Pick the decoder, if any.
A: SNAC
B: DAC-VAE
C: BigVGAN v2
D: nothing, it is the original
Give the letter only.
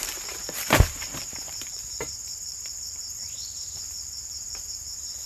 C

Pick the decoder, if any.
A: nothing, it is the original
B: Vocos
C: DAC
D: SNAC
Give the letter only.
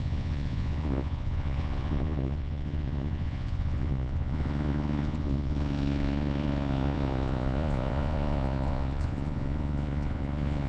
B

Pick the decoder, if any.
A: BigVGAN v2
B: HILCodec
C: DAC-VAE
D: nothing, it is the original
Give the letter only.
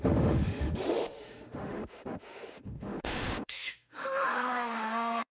C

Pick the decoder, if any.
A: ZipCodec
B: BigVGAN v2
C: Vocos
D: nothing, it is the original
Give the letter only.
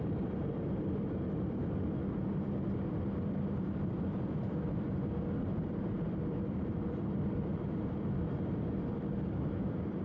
B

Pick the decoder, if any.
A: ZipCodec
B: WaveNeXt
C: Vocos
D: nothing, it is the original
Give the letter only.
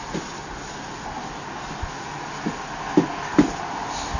D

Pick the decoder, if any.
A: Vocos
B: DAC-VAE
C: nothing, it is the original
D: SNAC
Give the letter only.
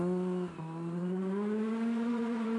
C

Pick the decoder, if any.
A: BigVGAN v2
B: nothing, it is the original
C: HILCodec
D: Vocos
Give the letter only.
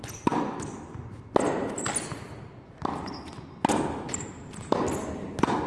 B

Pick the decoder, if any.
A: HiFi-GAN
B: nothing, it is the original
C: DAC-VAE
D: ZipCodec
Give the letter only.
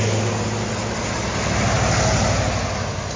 B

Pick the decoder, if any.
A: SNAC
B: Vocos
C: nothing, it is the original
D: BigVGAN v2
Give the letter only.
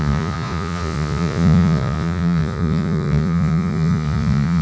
B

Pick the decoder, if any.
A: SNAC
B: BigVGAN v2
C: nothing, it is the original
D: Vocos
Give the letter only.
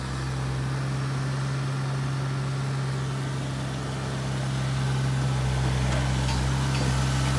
C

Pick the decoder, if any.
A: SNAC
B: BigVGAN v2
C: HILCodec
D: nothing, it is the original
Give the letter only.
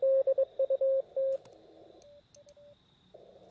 D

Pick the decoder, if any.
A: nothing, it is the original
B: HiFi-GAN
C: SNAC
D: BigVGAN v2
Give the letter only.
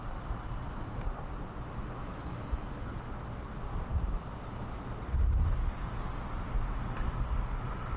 A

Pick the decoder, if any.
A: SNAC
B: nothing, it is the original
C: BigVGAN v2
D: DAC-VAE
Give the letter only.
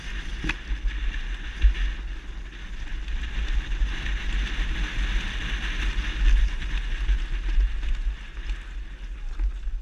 B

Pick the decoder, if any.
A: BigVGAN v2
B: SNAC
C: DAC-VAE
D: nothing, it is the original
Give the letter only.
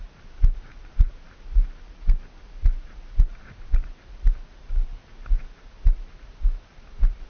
D